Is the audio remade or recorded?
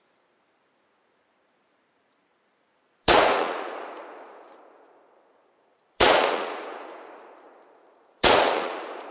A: remade